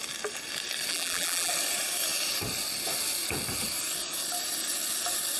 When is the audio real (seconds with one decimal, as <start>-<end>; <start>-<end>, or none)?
0.0-0.9; 1.5-5.4